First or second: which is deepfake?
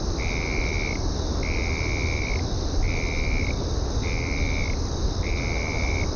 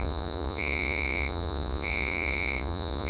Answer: second